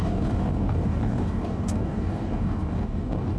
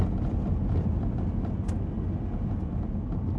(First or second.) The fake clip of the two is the first